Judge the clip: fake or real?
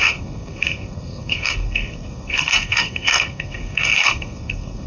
fake